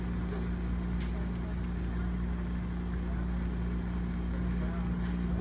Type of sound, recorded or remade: recorded